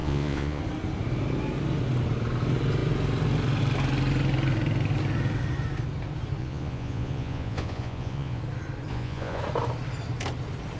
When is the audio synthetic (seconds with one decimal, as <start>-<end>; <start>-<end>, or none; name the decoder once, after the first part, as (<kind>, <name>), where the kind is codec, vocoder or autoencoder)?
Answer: 0.0-0.6 (vocoder, Vocos); 6.4-8.4; 8.9-9.4